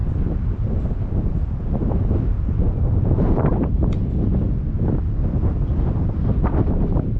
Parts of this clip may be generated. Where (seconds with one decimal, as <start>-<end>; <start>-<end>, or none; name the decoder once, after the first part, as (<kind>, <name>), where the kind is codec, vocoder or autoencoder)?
0.5-3.7 (vocoder, BigVGAN v2); 6.8-7.2